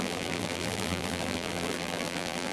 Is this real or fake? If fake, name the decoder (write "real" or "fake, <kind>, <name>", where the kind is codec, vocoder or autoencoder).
fake, vocoder, BigVGAN v2